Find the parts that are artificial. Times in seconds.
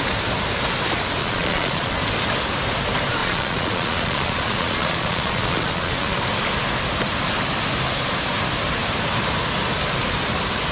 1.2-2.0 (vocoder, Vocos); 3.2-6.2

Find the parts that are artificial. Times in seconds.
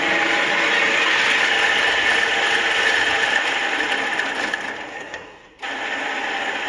4.9-5.6 (codec, SNAC)